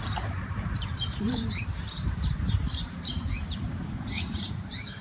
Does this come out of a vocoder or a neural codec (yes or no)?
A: yes